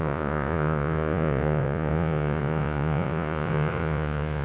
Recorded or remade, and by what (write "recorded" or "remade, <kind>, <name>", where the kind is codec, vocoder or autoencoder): remade, vocoder, Vocos